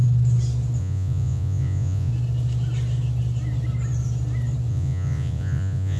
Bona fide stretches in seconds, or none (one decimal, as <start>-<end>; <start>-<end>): 0.0-0.8; 2.1-4.7